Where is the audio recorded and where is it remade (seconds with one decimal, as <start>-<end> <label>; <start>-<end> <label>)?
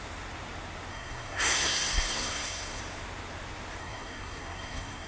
0.0-0.9 recorded; 0.9-2.8 remade; 2.8-3.8 recorded; 3.8-5.1 remade